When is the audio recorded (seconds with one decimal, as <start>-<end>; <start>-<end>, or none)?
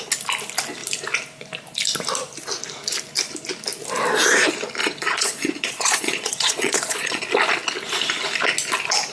0.0-4.8; 7.2-9.1